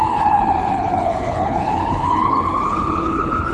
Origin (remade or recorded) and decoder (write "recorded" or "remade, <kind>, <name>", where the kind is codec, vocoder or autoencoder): remade, codec, HILCodec